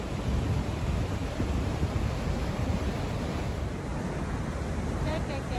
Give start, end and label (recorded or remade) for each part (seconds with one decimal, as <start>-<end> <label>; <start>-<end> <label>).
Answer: 0.0-3.9 remade; 3.9-4.6 recorded; 4.6-5.6 remade